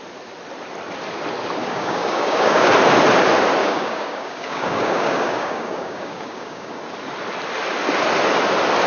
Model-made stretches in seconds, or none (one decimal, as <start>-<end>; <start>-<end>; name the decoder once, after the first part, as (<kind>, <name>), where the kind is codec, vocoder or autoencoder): 1.6-2.7 (codec, DAC); 3.6-6.7